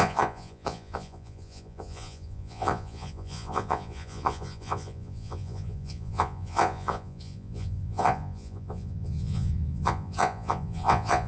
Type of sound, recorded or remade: remade